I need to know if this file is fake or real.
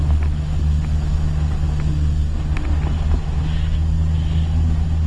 real